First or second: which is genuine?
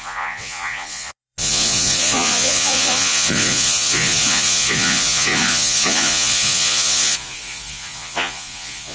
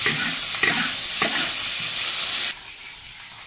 second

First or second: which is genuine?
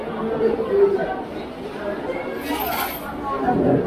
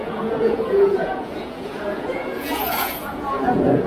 first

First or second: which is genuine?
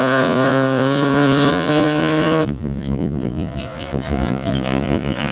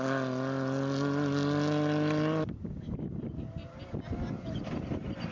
second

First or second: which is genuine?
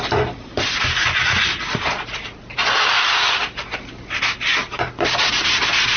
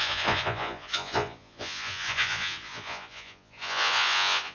first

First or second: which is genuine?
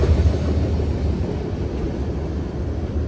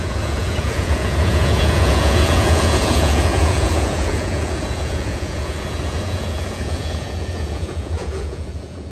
first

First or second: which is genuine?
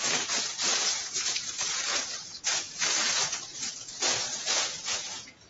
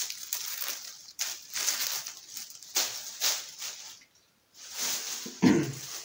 second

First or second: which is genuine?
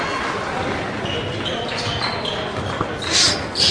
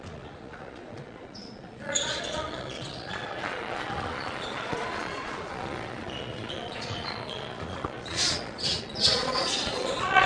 first